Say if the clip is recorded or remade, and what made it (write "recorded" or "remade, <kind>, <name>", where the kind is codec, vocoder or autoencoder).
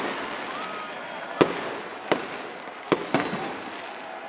recorded